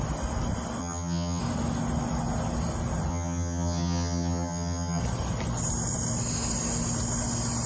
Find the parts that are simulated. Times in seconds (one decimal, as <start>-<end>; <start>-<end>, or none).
0.8-1.4; 3.1-5.0